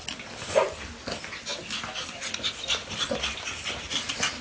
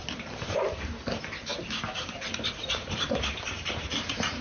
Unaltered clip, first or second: first